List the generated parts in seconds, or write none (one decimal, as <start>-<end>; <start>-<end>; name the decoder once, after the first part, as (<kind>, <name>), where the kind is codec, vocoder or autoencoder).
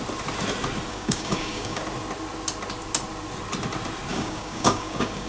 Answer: 0.9-1.8 (codec, DAC); 4.1-5.3